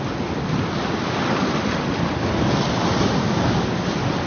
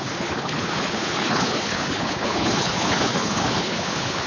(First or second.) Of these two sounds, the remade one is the second